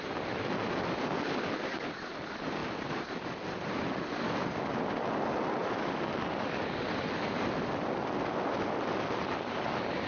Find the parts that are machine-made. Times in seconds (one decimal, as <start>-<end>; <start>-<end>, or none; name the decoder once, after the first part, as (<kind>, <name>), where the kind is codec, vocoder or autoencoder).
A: 2.6-6.3 (vocoder, BigVGAN v2)